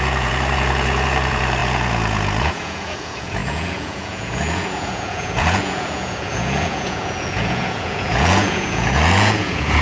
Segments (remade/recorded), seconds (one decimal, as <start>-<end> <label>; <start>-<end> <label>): 0.0-9.8 remade